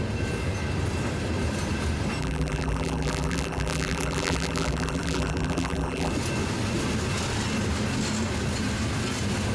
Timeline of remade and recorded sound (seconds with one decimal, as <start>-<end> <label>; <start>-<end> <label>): 0.0-2.2 recorded; 2.2-6.1 remade; 6.1-9.5 recorded